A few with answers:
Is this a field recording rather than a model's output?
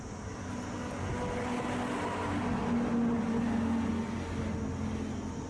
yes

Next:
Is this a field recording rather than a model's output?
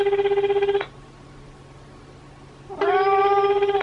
yes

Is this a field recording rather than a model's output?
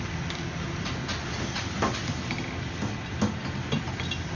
yes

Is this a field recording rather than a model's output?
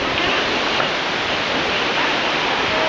yes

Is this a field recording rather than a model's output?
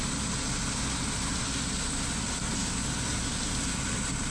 yes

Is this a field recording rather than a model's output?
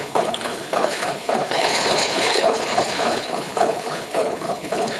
no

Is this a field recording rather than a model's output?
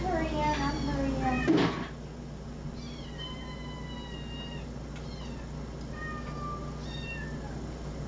yes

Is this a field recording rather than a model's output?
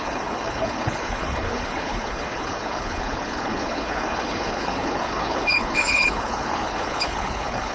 no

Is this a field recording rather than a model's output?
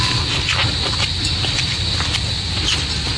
yes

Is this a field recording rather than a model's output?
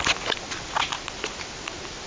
yes